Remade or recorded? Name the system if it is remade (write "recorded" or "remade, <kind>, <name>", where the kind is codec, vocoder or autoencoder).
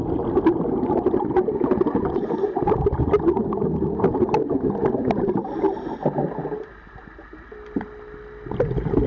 recorded